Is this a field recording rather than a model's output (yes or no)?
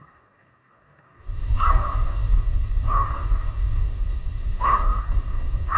no